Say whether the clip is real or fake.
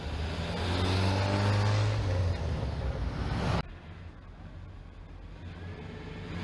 real